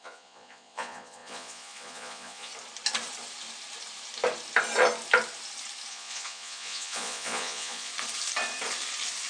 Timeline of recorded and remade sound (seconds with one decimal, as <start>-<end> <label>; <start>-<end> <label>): 0.0-2.5 remade; 2.5-5.9 recorded; 5.9-7.9 remade; 7.9-9.3 recorded